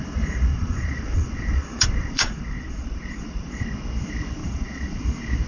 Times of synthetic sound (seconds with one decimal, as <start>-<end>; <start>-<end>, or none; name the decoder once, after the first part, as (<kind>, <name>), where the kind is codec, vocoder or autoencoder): 0.5-3.6 (vocoder, Vocos); 4.4-5.0